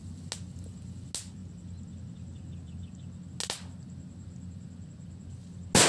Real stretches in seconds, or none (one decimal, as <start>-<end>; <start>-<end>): 0.0-5.9